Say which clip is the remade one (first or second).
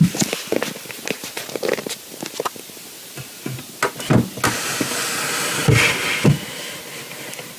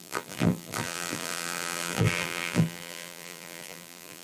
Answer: second